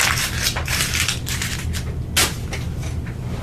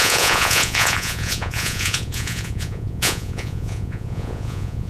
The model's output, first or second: second